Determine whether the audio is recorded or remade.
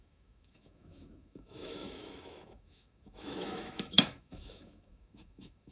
remade